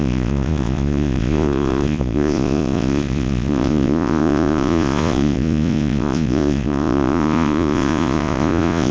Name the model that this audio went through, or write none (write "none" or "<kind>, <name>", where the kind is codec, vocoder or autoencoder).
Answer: vocoder, Vocos